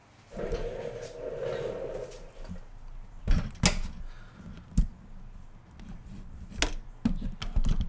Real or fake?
real